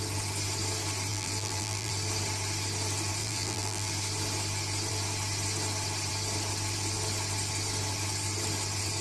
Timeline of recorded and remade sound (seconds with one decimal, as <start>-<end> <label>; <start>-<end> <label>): 0.0-1.1 recorded; 1.1-1.9 remade; 1.9-3.2 recorded; 3.2-3.9 remade; 3.9-9.0 recorded